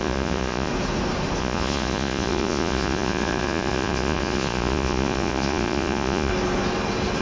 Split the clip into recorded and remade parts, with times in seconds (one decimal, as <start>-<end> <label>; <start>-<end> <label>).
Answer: 0.0-0.7 remade; 0.7-1.4 recorded; 1.4-6.3 remade; 6.3-7.2 recorded